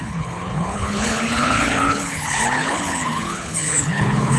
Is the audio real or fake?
fake